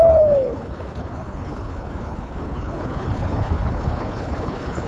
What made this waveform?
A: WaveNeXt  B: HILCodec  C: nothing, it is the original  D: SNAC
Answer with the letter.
B